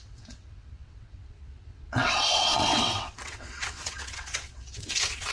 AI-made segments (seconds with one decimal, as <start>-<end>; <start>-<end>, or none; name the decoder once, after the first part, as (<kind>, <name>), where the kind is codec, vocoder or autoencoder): 0.0-5.3 (vocoder, WaveNeXt)